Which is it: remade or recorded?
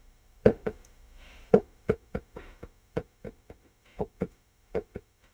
remade